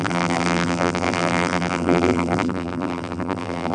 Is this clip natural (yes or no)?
no